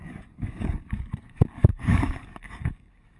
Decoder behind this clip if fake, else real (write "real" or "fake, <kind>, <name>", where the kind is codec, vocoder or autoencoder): fake, codec, DAC